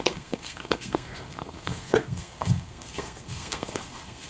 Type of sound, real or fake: fake